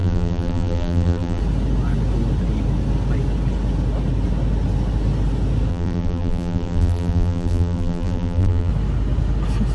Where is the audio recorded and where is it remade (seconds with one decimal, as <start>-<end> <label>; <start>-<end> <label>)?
0.0-1.4 remade; 1.4-5.7 recorded; 5.7-8.7 remade; 8.7-9.7 recorded